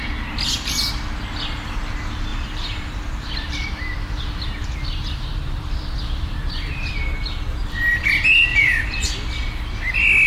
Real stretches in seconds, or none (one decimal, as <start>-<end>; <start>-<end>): 0.0-2.3; 6.9-7.6; 8.1-8.5; 9.1-10.3